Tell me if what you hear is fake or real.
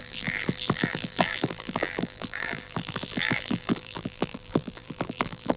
fake